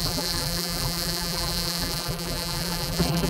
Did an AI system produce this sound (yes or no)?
yes